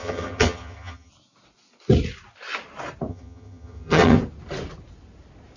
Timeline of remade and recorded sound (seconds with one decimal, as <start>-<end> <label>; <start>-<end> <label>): 0.0-1.1 remade; 1.1-3.1 recorded; 3.1-4.2 remade; 4.2-5.6 recorded